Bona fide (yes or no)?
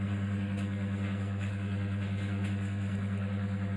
no